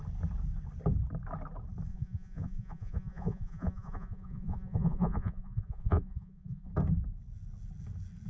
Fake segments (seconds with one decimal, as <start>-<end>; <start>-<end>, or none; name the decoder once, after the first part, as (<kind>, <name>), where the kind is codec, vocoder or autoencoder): 1.9-6.7 (vocoder, Vocos)